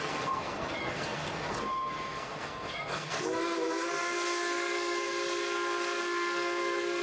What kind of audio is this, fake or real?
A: fake